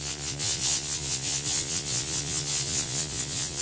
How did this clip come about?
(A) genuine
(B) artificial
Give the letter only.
B